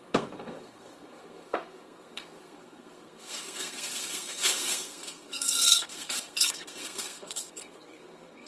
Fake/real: fake